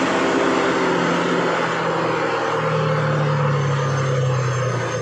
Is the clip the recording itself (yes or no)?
yes